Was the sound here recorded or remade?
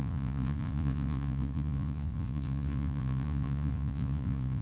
remade